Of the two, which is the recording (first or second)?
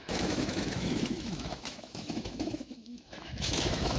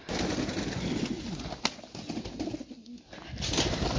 second